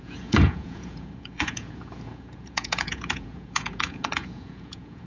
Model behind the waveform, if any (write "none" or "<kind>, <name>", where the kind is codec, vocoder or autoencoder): vocoder, Vocos